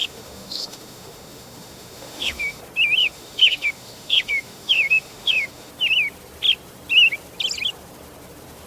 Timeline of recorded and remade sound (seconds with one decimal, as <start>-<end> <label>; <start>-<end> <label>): 0.0-2.6 remade; 2.6-3.0 recorded; 3.0-5.7 remade; 5.7-8.7 recorded